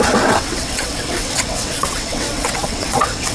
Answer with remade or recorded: remade